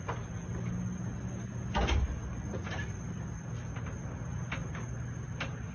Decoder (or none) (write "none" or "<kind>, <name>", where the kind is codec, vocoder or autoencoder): none